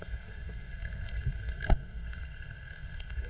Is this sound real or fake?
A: fake